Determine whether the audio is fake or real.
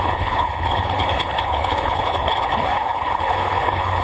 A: fake